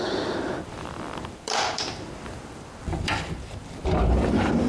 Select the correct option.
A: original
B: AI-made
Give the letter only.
B